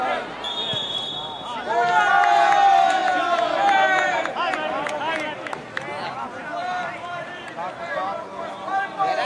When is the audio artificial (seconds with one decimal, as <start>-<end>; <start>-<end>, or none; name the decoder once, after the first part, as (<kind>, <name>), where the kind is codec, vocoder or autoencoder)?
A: 6.6-8.4 (vocoder, BigVGAN v2)

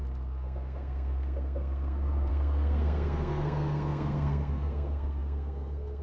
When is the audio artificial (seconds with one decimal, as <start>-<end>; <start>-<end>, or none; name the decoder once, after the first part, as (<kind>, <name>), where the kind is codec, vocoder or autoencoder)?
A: 0.0-6.0 (codec, SNAC)

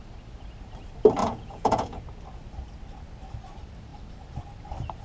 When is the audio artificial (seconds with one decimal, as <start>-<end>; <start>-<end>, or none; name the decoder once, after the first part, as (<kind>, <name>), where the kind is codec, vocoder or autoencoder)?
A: 1.2-2.0 (vocoder, Vocos)

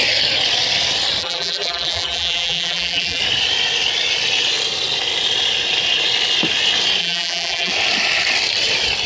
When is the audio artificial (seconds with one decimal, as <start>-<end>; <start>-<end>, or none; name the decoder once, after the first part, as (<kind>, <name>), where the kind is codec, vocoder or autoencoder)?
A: 1.2-3.2 (vocoder, BigVGAN v2); 7.0-7.7

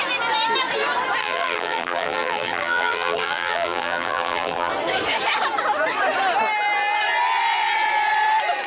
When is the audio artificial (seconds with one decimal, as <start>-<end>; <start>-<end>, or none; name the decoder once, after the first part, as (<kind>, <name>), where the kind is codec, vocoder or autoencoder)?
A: 1.2-4.7 (vocoder, BigVGAN v2)

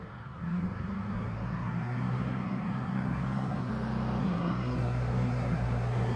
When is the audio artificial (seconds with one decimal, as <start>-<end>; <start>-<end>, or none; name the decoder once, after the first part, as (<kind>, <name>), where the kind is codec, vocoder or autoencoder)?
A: 0.0-3.7 (codec, SNAC); 4.2-6.2